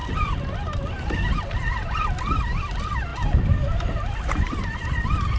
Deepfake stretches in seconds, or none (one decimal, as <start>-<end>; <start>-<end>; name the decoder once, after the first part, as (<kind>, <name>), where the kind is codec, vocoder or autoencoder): none